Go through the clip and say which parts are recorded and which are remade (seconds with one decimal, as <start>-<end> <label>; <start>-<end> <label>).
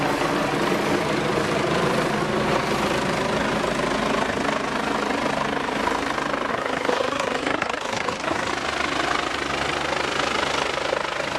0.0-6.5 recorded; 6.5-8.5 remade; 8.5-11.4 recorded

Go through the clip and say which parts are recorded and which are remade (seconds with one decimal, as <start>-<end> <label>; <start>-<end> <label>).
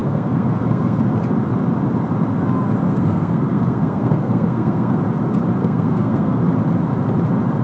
0.0-1.0 remade; 1.0-2.9 recorded; 2.9-5.0 remade; 5.0-5.6 recorded; 5.6-6.4 remade; 6.4-7.6 recorded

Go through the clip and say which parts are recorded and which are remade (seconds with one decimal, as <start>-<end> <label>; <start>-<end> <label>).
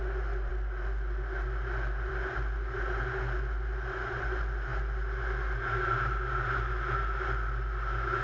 0.0-8.2 recorded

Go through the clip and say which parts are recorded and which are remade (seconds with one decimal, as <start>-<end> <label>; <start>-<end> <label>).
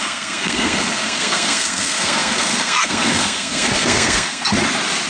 0.0-4.5 remade; 4.5-5.1 recorded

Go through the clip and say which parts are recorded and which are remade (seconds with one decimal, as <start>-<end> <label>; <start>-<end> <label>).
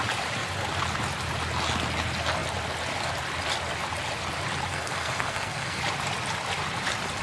0.0-4.7 recorded; 4.7-5.8 remade; 5.8-7.2 recorded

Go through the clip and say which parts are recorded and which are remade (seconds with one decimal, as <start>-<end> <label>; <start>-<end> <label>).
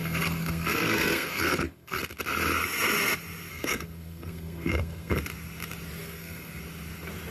0.0-2.0 remade; 2.0-3.5 recorded; 3.5-5.2 remade; 5.2-6.0 recorded; 6.0-6.6 remade; 6.6-7.3 recorded